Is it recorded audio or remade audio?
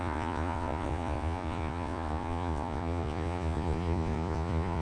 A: remade